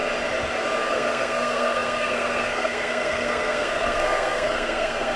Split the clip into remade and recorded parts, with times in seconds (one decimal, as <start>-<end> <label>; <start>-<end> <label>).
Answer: 0.0-0.9 recorded; 0.9-5.2 remade